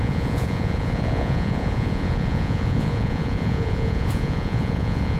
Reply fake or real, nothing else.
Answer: fake